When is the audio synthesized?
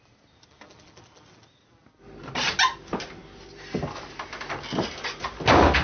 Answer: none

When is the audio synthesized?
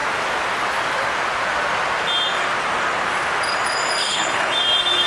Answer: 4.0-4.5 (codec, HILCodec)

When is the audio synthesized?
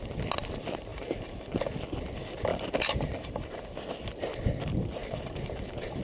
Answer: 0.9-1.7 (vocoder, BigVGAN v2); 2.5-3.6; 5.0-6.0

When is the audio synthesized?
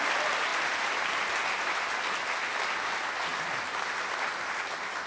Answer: none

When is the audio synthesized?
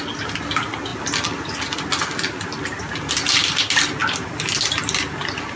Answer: none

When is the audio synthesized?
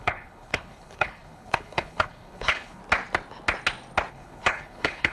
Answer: 0.0-2.8 (codec, HILCodec); 4.1-5.1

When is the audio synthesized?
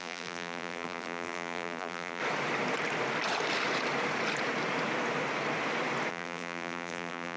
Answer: 0.0-2.2 (vocoder, BigVGAN v2); 6.1-7.4